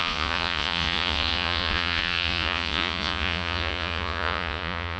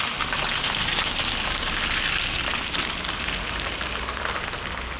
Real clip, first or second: second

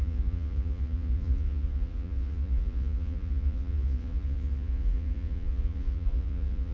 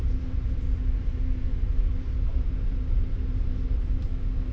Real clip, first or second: second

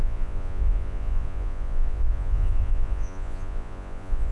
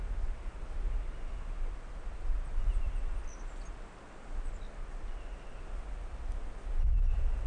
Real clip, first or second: second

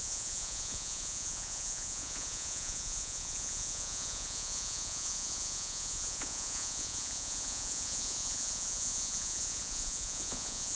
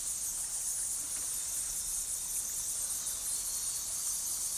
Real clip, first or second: second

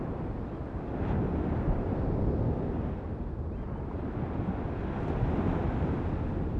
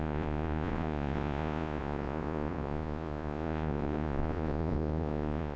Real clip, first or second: first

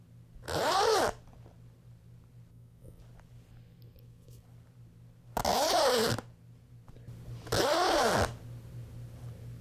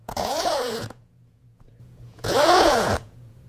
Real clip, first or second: first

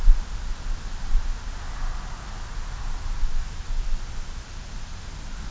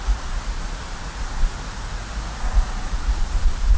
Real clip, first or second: first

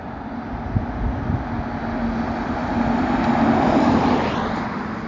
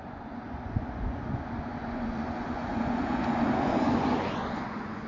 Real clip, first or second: first